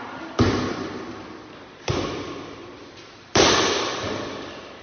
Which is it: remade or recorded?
remade